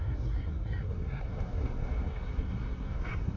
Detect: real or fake fake